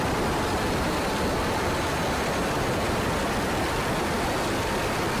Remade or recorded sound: recorded